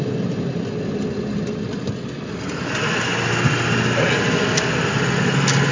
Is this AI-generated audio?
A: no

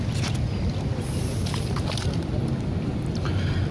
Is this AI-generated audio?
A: no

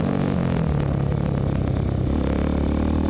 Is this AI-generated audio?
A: no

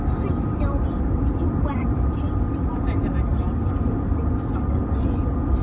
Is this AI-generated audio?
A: no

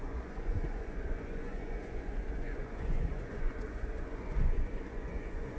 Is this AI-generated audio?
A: yes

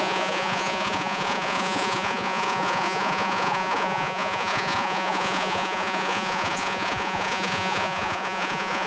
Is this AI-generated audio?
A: yes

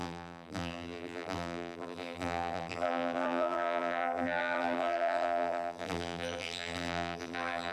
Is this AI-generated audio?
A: yes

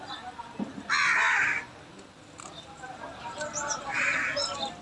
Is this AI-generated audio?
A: no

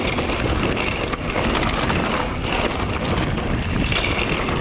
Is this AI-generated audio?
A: no